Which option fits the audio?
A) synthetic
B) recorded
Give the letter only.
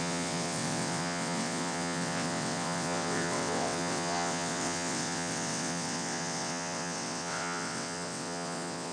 A